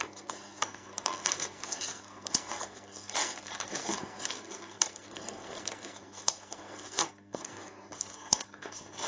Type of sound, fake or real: fake